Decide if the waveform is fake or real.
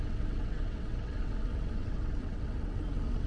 fake